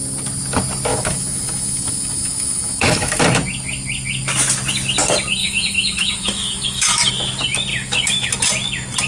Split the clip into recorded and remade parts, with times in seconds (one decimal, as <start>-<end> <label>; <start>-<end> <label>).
0.0-0.9 recorded; 0.9-3.2 remade; 3.2-5.4 recorded; 5.4-7.1 remade; 7.1-7.7 recorded; 7.7-8.3 remade; 8.3-9.1 recorded